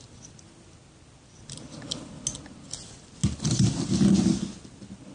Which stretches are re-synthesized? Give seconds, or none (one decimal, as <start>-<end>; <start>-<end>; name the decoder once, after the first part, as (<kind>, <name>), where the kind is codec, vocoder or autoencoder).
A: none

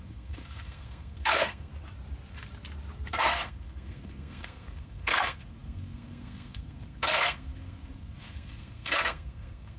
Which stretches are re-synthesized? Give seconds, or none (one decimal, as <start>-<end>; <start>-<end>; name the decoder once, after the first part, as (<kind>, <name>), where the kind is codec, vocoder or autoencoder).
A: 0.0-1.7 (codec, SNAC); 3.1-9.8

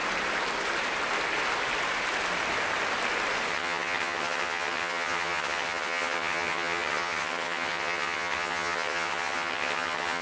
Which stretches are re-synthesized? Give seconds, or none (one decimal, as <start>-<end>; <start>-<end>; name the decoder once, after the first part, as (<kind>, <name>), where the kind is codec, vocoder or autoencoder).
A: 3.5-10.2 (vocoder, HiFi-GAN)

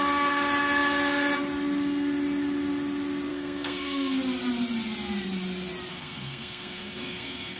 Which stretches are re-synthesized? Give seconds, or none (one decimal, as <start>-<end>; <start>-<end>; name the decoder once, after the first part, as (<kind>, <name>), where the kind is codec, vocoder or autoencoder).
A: 3.3-4.2 (codec, SNAC); 5.9-7.6